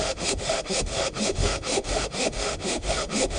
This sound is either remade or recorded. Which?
remade